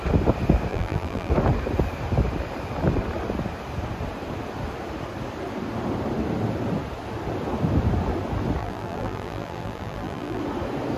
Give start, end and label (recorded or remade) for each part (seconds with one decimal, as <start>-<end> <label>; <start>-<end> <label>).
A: 0.0-0.7 recorded; 0.7-1.3 remade; 1.3-8.6 recorded; 8.6-10.4 remade; 10.4-11.0 recorded